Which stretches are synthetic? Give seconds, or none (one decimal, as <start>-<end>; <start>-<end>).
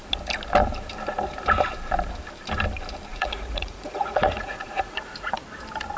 3.1-5.4